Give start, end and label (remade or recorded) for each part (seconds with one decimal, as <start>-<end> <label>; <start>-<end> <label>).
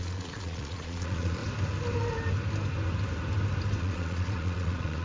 0.0-1.4 remade; 1.4-3.8 recorded; 3.8-5.0 remade